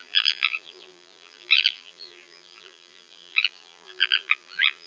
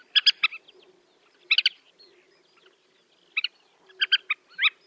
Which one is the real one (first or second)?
second